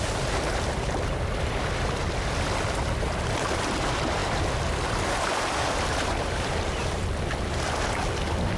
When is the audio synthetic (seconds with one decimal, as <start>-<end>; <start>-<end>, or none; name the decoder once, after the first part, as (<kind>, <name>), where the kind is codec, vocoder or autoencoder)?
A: 0.0-4.2 (vocoder, BigVGAN v2); 5.1-6.8